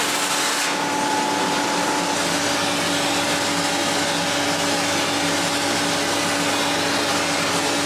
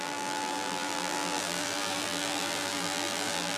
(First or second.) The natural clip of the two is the first